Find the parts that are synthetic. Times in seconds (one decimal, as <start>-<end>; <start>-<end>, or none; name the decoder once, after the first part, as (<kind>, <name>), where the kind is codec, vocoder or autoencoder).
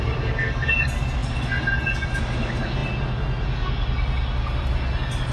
none